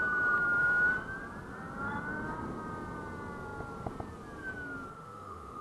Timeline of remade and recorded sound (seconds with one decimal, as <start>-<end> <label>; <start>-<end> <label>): 0.0-4.9 recorded; 4.9-5.6 remade